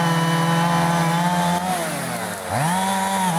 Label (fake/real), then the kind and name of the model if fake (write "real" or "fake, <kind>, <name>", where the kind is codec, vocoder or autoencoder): real